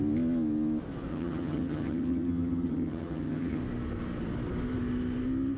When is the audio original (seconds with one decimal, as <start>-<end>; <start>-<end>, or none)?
0.0-1.1; 3.6-5.6